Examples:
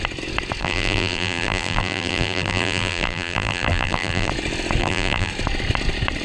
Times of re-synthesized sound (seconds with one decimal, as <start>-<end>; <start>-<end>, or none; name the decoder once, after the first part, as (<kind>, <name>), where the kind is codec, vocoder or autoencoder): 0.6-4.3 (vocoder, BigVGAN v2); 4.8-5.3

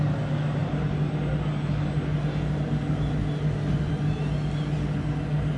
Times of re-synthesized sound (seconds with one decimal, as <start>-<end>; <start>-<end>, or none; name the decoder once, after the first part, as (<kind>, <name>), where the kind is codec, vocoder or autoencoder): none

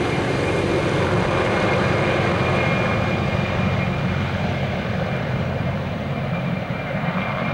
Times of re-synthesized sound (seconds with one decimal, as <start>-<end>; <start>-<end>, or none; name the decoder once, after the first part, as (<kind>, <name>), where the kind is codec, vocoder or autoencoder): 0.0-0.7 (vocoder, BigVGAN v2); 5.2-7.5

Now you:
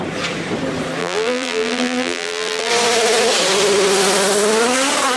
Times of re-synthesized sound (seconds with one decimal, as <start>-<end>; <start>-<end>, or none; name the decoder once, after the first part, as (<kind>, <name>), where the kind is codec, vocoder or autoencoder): 1.0-2.7 (vocoder, BigVGAN v2)

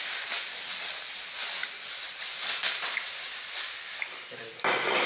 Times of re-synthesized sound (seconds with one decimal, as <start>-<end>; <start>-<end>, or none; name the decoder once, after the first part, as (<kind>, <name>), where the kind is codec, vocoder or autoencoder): 0.0-1.6 (vocoder, BigVGAN v2)

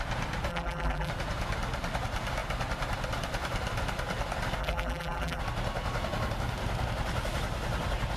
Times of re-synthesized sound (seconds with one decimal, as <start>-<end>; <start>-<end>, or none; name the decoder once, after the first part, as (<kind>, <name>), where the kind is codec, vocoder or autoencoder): 0.5-1.1 (vocoder, BigVGAN v2); 4.6-5.4

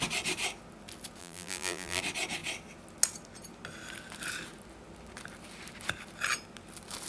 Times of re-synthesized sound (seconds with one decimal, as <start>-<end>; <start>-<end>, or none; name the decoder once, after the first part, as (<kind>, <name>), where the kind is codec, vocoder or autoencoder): 1.2-2.0 (vocoder, BigVGAN v2)

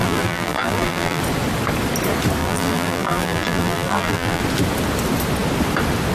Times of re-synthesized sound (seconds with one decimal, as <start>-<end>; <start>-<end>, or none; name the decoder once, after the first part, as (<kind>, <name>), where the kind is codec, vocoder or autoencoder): 0.0-1.2 (vocoder, BigVGAN v2); 2.4-4.4